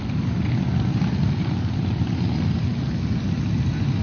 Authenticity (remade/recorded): recorded